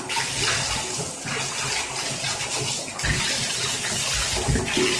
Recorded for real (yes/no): yes